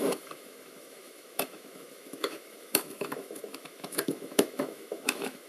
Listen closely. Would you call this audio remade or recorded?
remade